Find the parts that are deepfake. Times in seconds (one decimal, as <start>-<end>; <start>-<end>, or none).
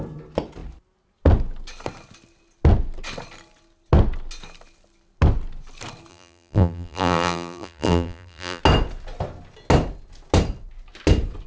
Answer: 6.1-8.6